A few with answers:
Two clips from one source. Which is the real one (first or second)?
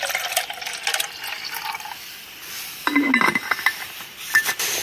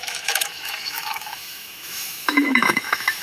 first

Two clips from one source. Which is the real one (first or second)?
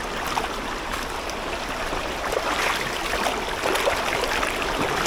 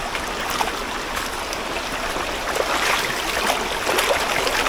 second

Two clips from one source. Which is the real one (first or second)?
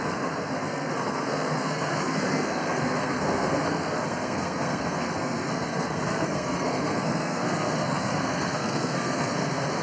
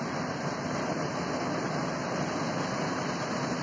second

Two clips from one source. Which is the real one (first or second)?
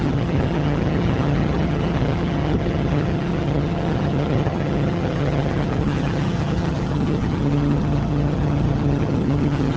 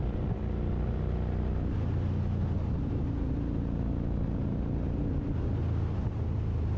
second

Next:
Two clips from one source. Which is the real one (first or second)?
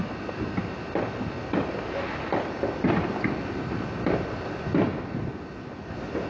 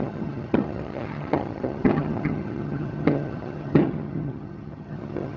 first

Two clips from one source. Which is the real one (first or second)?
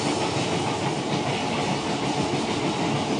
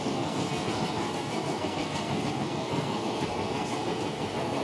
first